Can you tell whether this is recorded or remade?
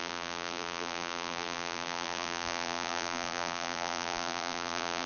remade